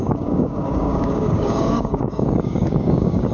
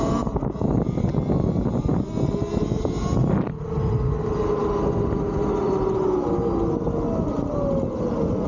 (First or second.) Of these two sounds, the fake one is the first